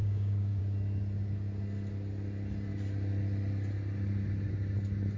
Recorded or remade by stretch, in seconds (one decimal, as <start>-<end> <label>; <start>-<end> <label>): 0.0-0.6 remade; 0.6-5.2 recorded